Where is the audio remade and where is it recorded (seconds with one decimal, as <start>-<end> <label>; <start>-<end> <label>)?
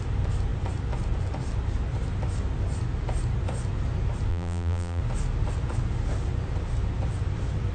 0.0-4.3 recorded; 4.3-5.0 remade; 5.0-7.7 recorded